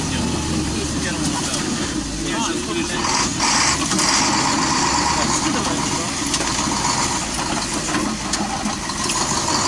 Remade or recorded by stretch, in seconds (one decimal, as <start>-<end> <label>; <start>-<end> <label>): 0.0-9.7 recorded